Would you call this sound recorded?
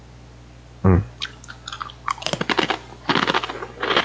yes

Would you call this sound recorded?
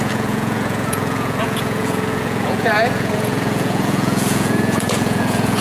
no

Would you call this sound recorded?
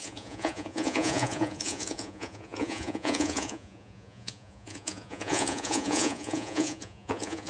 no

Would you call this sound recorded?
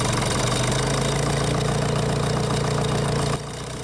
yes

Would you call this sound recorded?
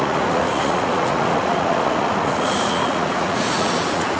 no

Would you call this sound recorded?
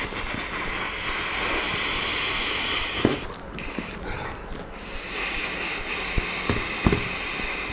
yes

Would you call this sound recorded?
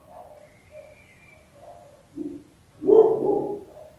yes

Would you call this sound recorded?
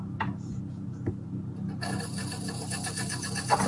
yes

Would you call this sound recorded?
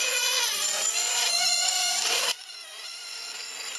no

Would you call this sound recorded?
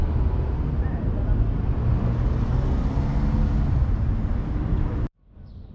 yes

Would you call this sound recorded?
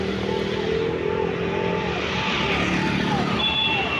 yes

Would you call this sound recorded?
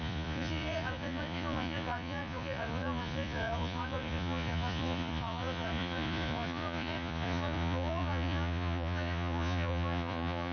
no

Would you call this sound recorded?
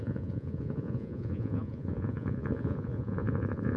no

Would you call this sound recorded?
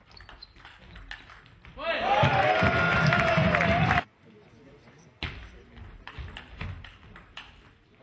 yes